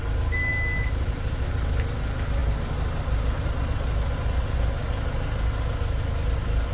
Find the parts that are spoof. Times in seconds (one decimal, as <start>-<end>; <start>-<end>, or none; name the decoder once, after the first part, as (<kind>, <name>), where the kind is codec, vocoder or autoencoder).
none